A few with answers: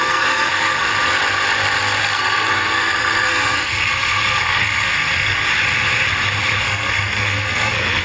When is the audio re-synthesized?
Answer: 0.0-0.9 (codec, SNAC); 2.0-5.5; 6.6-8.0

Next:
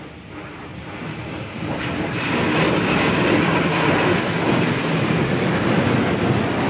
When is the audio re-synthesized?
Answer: none

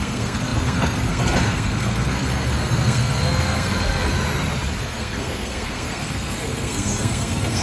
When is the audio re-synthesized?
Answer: 0.0-4.1 (codec, SNAC); 4.8-7.6

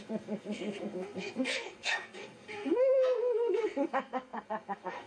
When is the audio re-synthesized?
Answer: 0.0-5.1 (codec, SNAC)

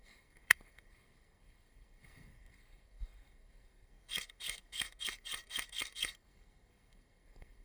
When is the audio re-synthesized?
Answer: 0.0-7.6 (codec, SNAC)

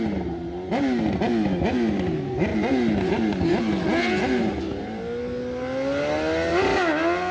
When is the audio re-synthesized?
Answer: none

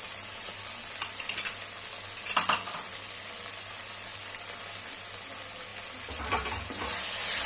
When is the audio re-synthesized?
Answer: none

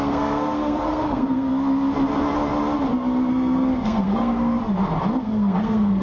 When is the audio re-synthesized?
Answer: 0.0-1.5 (codec, SNAC); 3.3-4.6; 5.2-6.0